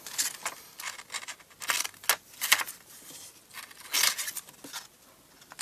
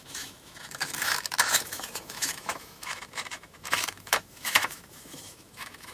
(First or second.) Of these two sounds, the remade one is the second